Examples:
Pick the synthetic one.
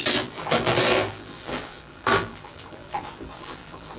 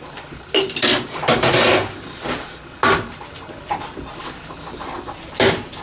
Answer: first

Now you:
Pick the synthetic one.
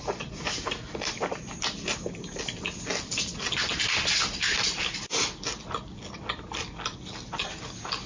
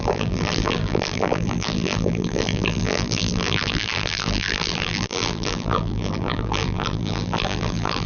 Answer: second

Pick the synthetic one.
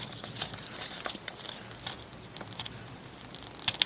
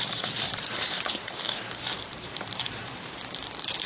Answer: second